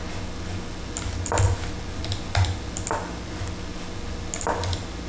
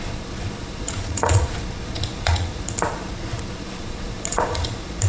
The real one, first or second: first